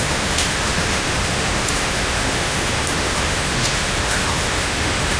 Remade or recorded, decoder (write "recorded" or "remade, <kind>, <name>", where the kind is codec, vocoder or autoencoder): remade, autoencoder, DAC-VAE